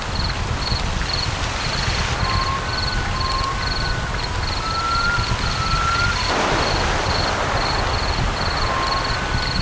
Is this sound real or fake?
real